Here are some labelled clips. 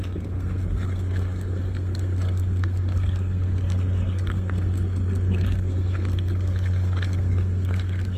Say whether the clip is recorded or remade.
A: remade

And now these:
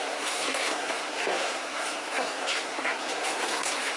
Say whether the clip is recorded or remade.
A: remade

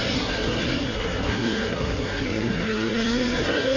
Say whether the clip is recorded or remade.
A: remade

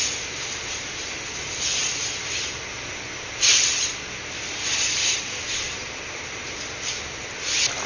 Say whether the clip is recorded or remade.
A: recorded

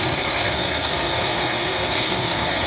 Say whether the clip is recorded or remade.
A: remade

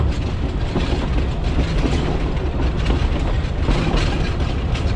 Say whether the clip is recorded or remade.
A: recorded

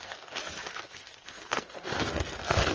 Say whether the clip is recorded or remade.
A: remade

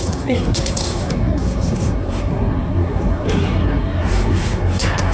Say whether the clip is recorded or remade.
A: remade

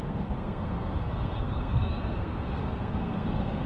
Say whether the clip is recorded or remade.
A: remade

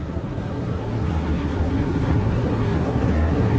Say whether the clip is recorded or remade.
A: remade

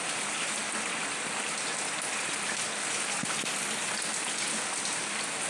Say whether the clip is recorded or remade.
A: recorded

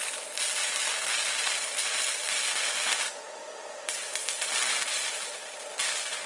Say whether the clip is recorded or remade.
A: recorded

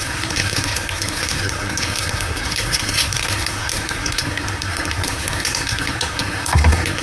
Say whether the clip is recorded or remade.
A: remade